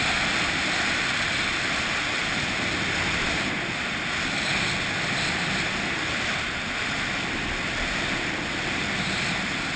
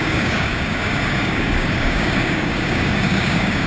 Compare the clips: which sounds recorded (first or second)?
first